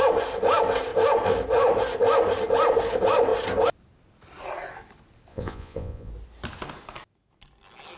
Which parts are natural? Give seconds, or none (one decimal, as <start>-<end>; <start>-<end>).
0.0-5.3; 6.1-8.0